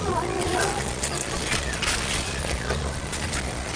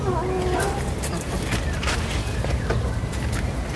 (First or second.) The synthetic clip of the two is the first